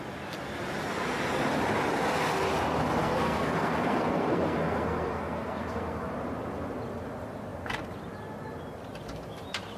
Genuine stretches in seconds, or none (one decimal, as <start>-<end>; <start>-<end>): 0.0-3.0; 6.1-9.8